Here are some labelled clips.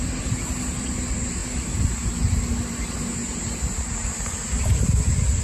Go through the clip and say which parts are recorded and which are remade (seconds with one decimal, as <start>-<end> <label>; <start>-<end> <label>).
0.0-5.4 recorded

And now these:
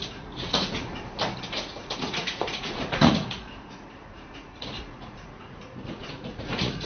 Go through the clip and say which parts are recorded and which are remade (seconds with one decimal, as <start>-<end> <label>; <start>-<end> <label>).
0.0-0.9 remade; 0.9-1.5 recorded; 1.5-6.9 remade

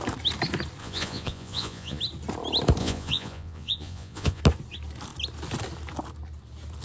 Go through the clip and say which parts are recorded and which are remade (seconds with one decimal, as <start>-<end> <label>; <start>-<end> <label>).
0.0-0.8 recorded; 0.8-2.0 remade; 2.0-2.8 recorded; 2.8-4.4 remade; 4.4-6.8 recorded

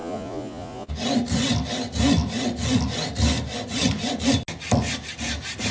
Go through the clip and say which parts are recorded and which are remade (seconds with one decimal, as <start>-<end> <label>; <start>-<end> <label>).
0.0-0.9 remade; 0.9-5.7 recorded

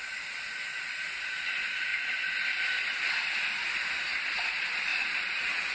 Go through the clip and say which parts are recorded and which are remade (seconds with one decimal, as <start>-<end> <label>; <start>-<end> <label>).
0.0-4.9 recorded; 4.9-5.7 remade

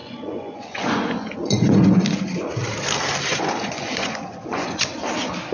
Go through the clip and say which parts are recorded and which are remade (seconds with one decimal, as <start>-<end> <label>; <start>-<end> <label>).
0.0-2.0 remade; 2.0-3.3 recorded; 3.3-4.9 remade; 4.9-5.5 recorded